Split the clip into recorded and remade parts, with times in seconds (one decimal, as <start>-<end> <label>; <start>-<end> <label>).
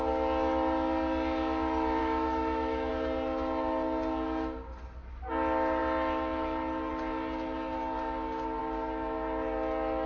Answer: 0.0-2.0 recorded; 2.0-2.9 remade; 2.9-10.1 recorded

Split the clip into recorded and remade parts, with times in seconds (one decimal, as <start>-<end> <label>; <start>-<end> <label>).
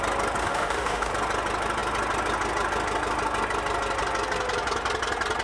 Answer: 0.0-0.4 recorded; 0.4-1.1 remade; 1.1-5.4 recorded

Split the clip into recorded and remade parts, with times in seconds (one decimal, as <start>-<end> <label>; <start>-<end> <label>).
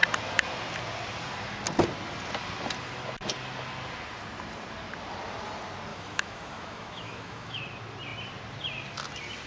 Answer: 0.0-5.9 recorded; 5.9-7.6 remade; 7.6-9.5 recorded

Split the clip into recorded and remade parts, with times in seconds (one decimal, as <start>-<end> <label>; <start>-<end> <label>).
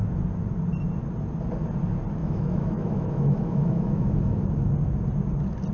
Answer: 0.0-2.2 recorded; 2.2-4.7 remade; 4.7-5.7 recorded